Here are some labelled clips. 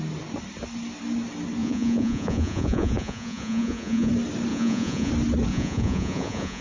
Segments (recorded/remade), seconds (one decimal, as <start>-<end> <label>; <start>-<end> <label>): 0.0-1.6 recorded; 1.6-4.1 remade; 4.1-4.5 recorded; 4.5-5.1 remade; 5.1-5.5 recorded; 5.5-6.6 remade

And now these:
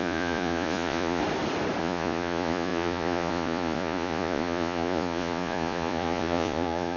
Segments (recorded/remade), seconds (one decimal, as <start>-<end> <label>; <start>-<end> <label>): 0.0-1.2 remade; 1.2-1.8 recorded; 1.8-7.0 remade

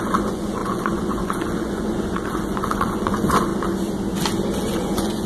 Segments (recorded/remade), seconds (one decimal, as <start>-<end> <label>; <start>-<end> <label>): 0.0-3.5 remade; 3.5-4.6 recorded; 4.6-5.3 remade

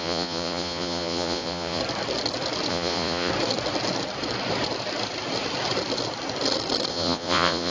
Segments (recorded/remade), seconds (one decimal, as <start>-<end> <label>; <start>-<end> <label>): 0.0-1.8 remade; 1.8-2.7 recorded; 2.7-3.3 remade; 3.3-6.9 recorded; 6.9-7.7 remade

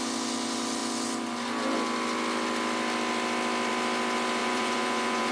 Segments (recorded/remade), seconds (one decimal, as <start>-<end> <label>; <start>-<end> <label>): 0.0-4.4 recorded; 4.4-5.3 remade